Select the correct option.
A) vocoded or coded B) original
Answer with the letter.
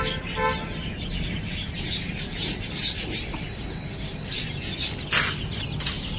B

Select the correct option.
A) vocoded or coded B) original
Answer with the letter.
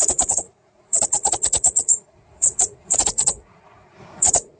A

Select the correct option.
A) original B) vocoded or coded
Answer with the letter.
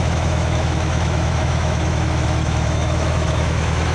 B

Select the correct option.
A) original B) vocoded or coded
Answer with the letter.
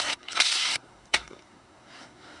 B